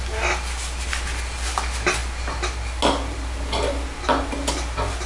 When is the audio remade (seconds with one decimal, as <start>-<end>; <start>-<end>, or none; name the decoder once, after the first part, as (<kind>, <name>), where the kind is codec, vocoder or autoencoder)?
none